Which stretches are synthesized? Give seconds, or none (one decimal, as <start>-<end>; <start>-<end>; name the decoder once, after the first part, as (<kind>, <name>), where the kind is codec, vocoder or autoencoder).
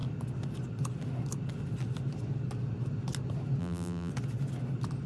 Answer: 3.6-4.1 (vocoder, BigVGAN v2)